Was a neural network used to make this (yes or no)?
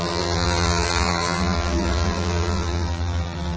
yes